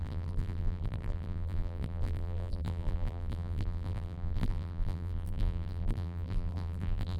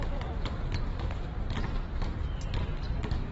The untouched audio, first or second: second